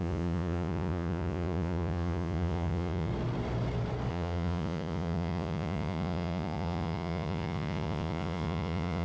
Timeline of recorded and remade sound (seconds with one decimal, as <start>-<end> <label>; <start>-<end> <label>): 0.0-3.1 remade; 3.1-4.1 recorded; 4.1-9.0 remade